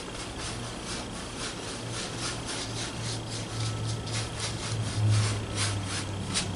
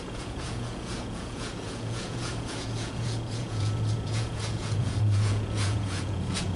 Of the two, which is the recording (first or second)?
first